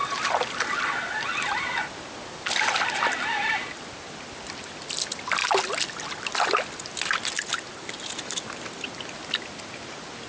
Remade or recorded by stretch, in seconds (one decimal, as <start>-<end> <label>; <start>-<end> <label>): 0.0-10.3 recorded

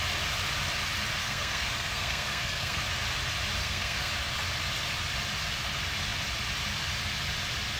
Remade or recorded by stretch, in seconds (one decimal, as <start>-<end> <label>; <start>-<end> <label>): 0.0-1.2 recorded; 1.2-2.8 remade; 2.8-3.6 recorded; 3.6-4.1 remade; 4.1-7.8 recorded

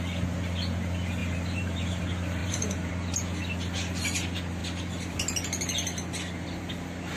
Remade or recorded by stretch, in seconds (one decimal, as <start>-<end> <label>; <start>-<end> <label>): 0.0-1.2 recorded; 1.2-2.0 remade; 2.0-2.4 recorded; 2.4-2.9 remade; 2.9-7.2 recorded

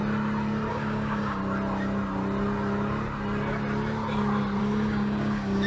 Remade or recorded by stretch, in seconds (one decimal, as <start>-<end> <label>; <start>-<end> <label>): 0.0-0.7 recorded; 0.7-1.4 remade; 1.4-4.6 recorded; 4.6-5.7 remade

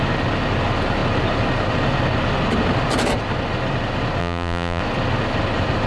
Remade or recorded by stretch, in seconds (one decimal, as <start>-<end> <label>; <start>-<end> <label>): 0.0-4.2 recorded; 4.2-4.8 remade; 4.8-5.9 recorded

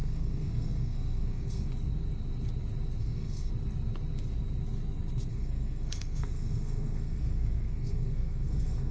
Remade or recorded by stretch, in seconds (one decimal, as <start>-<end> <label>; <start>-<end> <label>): 0.0-1.7 remade; 1.7-3.0 recorded; 3.0-3.5 remade; 3.5-5.3 recorded; 5.3-8.9 remade

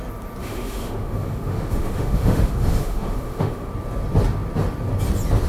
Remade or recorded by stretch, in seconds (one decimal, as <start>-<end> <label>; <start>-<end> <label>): 0.0-0.4 recorded; 0.4-3.7 remade; 3.7-5.5 recorded